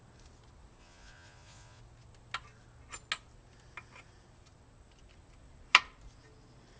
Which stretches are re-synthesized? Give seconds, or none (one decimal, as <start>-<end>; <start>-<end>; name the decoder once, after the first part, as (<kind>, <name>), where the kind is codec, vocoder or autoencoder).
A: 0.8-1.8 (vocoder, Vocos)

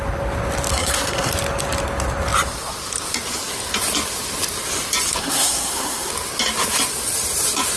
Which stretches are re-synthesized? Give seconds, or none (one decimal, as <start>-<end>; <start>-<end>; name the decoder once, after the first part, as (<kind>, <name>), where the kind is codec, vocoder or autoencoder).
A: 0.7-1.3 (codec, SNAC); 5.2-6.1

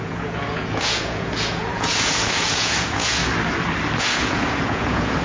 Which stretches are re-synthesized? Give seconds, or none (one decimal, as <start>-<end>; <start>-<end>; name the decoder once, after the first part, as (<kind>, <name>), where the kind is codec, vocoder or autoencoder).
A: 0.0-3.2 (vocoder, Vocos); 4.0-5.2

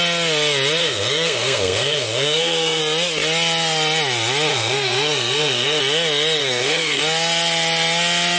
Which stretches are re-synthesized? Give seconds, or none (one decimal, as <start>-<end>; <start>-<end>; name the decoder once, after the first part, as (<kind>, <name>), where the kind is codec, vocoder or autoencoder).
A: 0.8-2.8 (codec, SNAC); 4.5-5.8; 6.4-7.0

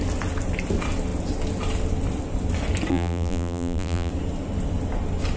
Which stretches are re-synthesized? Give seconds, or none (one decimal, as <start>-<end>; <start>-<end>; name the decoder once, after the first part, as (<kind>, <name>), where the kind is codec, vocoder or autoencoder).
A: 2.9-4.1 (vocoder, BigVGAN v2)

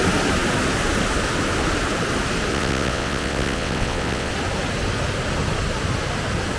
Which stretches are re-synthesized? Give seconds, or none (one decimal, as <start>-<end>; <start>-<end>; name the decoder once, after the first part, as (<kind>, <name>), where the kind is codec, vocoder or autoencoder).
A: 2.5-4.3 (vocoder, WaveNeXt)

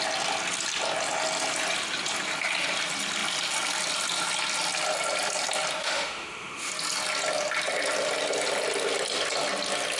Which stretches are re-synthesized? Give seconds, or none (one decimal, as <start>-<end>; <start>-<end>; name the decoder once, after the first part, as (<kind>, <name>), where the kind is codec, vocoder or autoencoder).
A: 5.8-6.7 (autoencoder, DAC-VAE)